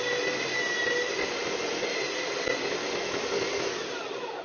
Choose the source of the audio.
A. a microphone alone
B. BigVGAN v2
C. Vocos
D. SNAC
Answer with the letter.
A